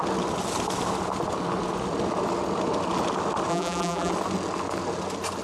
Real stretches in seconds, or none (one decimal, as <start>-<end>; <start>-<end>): 0.0-3.5; 4.1-5.4